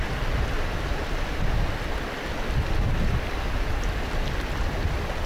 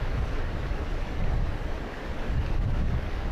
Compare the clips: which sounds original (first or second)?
first